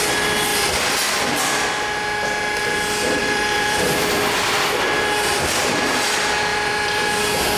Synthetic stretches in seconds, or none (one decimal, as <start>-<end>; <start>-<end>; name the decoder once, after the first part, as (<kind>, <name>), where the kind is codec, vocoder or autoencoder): 3.2-4.2 (vocoder, BigVGAN v2); 6.5-7.1